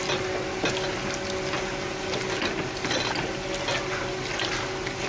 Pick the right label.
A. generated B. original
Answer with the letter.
B